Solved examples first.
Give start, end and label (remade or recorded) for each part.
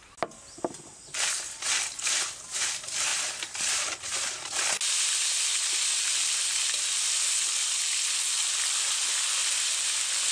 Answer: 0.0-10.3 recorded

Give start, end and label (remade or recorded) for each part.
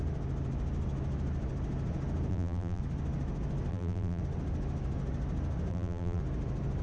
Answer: 0.0-2.3 recorded; 2.3-2.8 remade; 2.8-3.7 recorded; 3.7-4.2 remade; 4.2-5.7 recorded; 5.7-6.2 remade; 6.2-6.8 recorded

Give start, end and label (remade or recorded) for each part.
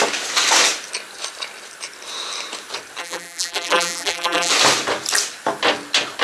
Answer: 0.0-3.0 recorded; 3.0-4.5 remade; 4.5-6.2 recorded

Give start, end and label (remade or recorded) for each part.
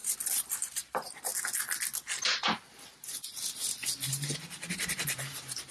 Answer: 0.0-1.3 remade; 1.3-4.7 recorded; 4.7-5.7 remade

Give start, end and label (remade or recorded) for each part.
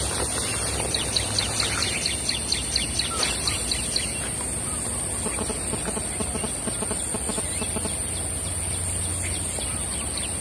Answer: 0.0-10.4 recorded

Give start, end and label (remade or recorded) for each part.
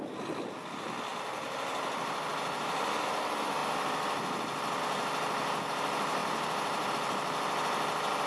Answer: 0.0-6.2 recorded; 6.2-6.9 remade; 6.9-8.3 recorded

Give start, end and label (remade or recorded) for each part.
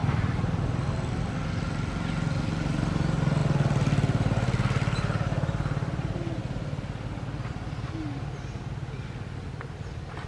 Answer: 0.0-10.3 recorded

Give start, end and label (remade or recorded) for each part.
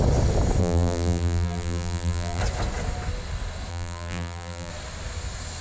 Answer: 0.0-0.6 recorded; 0.6-2.4 remade; 2.4-3.7 recorded; 3.7-4.7 remade; 4.7-5.6 recorded